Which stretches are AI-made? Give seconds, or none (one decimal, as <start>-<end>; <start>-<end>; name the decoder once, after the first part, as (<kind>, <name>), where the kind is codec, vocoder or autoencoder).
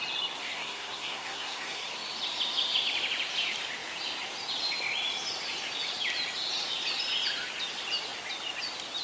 0.4-1.8 (codec, SNAC)